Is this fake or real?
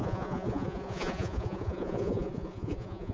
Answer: fake